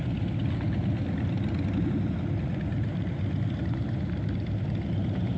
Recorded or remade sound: recorded